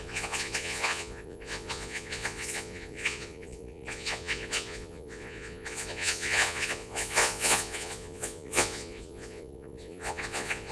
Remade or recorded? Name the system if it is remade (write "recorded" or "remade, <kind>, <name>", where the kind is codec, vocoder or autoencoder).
remade, vocoder, Vocos